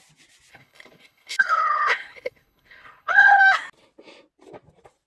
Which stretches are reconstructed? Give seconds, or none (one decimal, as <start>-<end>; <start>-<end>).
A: 0.5-3.4